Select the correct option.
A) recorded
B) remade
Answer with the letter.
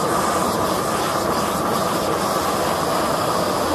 A